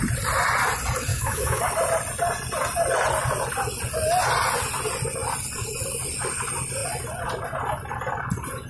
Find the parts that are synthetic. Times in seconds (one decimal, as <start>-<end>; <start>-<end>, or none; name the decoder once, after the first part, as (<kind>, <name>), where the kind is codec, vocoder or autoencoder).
1.1-1.6 (autoencoder, DAC-VAE)